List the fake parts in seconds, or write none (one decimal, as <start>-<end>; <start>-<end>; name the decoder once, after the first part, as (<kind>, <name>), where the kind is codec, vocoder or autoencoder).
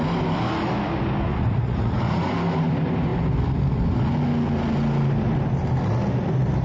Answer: 1.3-2.3 (vocoder, Vocos)